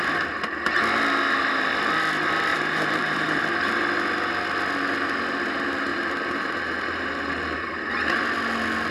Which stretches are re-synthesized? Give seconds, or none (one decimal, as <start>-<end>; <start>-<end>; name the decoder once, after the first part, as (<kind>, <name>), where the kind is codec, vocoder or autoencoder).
2.5-3.4 (vocoder, BigVGAN v2); 5.9-7.9